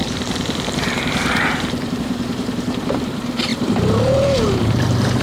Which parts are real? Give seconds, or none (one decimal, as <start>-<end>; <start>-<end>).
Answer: none